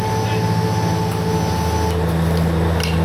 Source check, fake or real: real